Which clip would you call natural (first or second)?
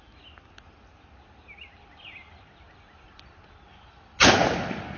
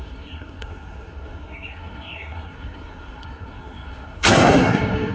first